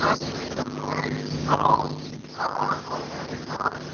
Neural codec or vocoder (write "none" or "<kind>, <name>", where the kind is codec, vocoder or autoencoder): none